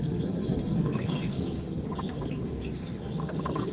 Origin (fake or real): fake